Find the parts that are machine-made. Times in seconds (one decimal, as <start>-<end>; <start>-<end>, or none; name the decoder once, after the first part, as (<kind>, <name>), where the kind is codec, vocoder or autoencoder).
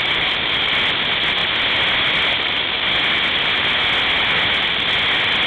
none